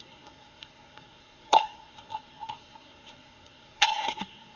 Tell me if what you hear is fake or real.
fake